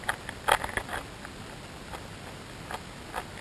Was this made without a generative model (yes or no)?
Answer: yes